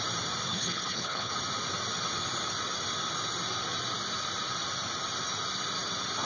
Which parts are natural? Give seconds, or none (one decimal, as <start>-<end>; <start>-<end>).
0.0-0.5; 1.3-6.3